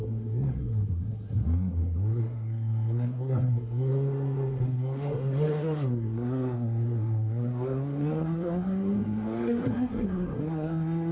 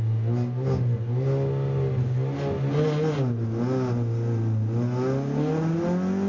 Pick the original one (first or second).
second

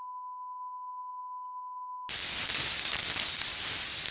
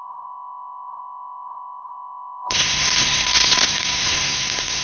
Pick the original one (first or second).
first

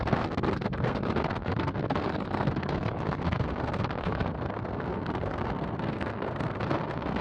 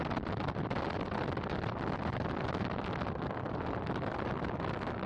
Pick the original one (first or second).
second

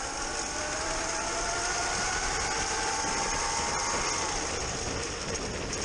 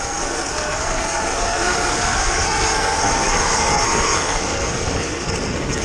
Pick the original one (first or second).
first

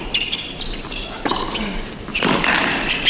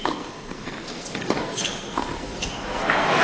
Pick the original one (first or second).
first